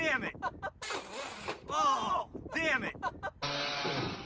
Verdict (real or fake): real